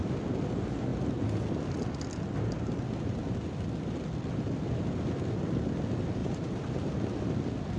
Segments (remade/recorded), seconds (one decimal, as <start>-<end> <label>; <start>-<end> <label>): 0.0-6.2 recorded; 6.2-6.8 remade; 6.8-7.8 recorded